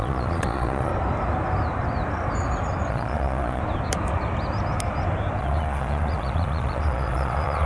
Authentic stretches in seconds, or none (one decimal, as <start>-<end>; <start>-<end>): 0.9-2.9; 3.6-5.4